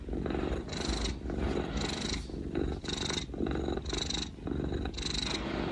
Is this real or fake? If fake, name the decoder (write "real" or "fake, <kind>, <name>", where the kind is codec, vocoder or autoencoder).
real